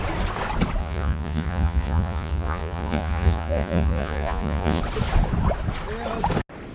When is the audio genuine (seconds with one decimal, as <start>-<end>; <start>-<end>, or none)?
0.0-0.8; 4.8-6.7